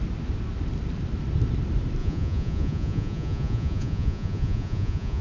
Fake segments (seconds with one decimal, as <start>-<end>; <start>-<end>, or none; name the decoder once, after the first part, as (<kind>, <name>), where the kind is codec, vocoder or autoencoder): 2.0-5.2 (vocoder, Vocos)